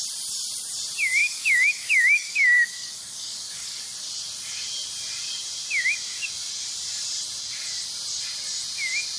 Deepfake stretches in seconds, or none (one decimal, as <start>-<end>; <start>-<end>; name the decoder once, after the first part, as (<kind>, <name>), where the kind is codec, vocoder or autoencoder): 1.2-3.8 (codec, DAC)